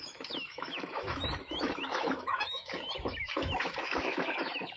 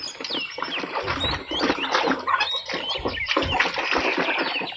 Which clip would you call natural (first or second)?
second